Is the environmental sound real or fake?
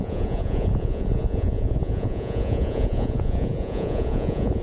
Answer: fake